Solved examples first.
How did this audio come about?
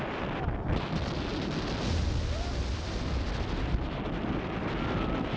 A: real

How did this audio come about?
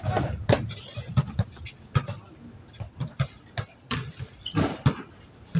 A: real